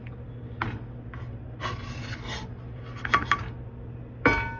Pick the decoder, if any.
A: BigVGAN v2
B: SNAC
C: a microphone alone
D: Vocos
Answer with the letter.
C